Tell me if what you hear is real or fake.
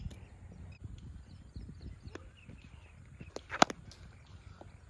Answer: real